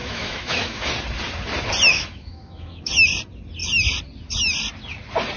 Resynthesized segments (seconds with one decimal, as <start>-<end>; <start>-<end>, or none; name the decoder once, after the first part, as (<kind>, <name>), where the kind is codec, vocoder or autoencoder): 0.0-0.9 (autoencoder, DAC-VAE); 1.9-2.9